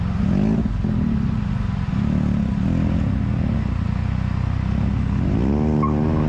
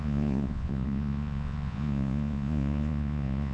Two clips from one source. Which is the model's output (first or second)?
second